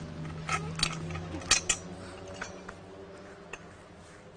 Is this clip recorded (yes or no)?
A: yes